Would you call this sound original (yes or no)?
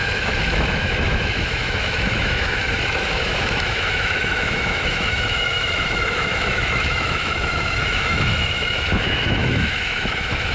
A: no